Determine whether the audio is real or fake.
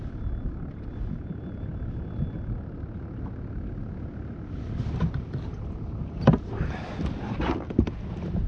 real